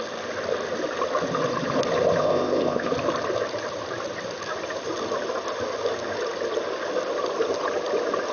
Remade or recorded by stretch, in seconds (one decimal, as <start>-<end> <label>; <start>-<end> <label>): 0.0-2.2 recorded; 2.2-2.9 remade; 2.9-8.3 recorded